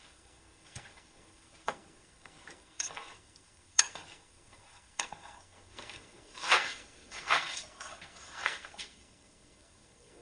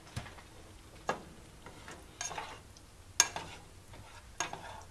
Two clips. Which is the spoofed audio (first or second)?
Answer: first